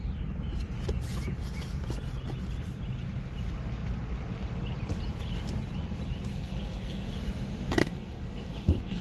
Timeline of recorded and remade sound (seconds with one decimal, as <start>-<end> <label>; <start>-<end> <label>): 0.0-6.3 recorded; 6.3-7.1 remade; 7.1-7.8 recorded; 7.8-9.0 remade